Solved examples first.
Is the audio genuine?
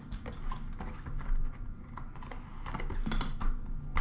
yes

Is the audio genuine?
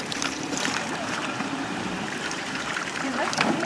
no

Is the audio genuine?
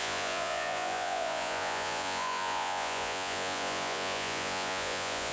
no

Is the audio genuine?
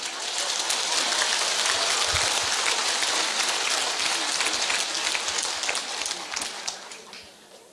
yes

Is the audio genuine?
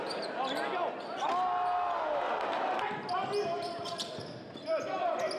yes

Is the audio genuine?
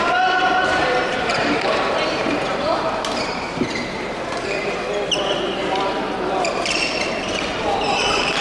no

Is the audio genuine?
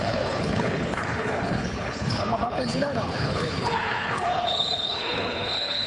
no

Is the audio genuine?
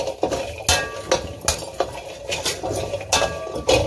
yes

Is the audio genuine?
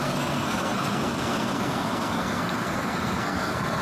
no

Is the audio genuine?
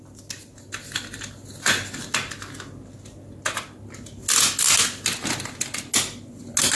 yes